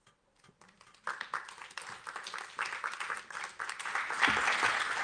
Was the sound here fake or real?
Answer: real